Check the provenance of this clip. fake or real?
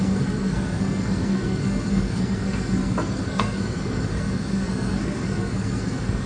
fake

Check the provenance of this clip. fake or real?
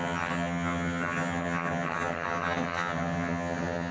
fake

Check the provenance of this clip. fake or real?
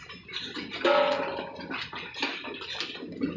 real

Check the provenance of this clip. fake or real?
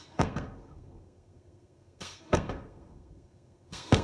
fake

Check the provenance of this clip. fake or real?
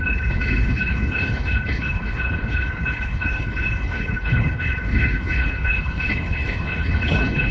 fake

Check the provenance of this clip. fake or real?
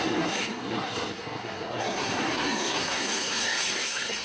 fake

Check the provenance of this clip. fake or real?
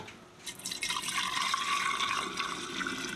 real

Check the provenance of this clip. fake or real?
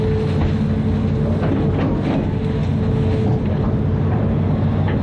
real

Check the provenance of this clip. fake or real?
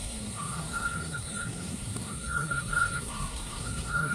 fake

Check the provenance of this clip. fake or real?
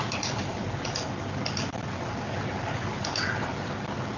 real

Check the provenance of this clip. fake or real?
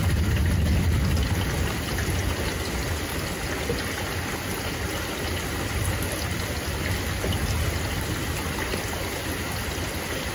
real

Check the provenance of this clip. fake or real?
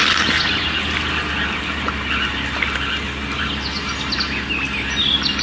real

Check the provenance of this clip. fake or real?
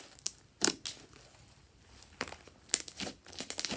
real